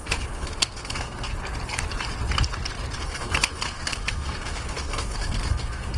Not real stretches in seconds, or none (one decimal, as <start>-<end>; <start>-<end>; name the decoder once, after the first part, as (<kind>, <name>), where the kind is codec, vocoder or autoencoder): 0.0-1.3 (codec, SNAC); 3.0-6.0

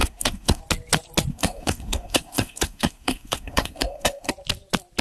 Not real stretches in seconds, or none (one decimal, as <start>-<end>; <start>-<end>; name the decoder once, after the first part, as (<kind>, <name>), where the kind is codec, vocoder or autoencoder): 0.0-0.6 (codec, SNAC); 1.3-4.3

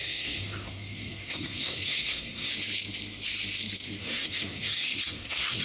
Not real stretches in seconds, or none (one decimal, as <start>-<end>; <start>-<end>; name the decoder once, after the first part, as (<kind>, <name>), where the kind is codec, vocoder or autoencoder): 0.0-2.5 (codec, SNAC); 4.0-5.6

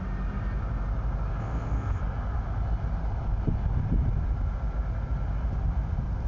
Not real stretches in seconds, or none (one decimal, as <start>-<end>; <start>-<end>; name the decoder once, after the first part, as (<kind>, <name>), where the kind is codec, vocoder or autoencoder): 1.4-2.0 (codec, SNAC)

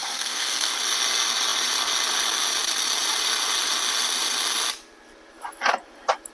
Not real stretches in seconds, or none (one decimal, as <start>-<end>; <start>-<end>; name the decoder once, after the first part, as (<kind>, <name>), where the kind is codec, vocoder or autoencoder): 0.0-0.7 (codec, SNAC)

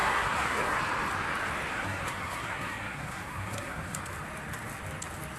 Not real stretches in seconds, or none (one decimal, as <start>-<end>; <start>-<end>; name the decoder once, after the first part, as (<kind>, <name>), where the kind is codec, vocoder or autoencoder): 0.0-0.8 (codec, SNAC); 1.7-4.0